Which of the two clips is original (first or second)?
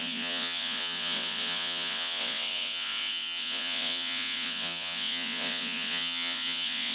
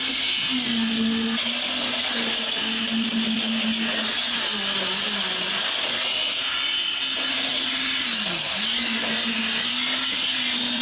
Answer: second